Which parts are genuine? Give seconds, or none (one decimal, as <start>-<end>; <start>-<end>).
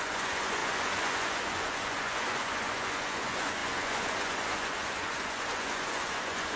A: none